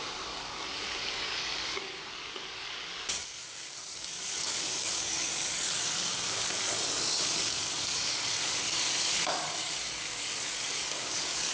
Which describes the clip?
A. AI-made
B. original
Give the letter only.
A